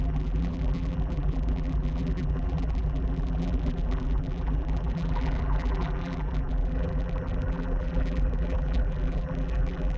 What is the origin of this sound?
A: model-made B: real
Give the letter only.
A